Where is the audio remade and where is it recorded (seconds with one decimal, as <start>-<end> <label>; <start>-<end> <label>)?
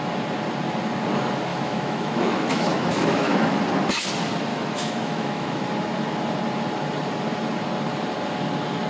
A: 0.0-1.5 recorded; 1.5-3.6 remade; 3.6-4.5 recorded; 4.5-5.6 remade; 5.6-8.9 recorded